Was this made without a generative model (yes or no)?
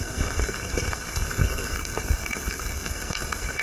no